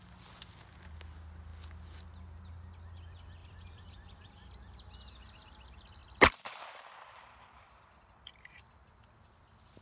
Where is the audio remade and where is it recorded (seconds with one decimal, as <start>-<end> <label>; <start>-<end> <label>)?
0.0-3.4 recorded; 3.4-4.3 remade; 4.3-6.0 recorded; 6.0-8.7 remade; 8.7-9.8 recorded